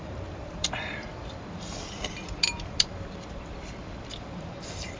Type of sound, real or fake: fake